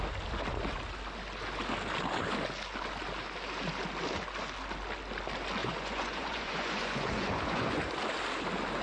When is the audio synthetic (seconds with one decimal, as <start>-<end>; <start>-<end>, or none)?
5.6-7.8